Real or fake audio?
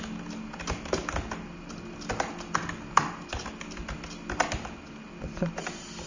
real